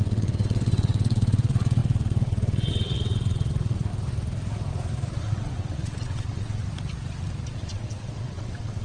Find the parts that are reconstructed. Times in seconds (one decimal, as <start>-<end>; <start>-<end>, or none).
0.0-3.9; 5.2-6.6; 7.5-8.8